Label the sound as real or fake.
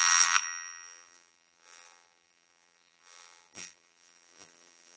fake